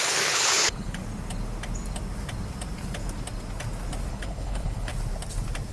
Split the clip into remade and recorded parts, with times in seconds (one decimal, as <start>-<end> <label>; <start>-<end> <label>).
0.0-1.0 remade; 1.0-4.1 recorded; 4.1-4.9 remade; 4.9-5.7 recorded